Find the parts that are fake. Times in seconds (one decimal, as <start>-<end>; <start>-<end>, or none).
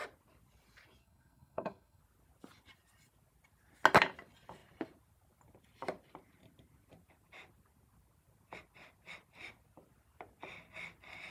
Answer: 1.0-2.0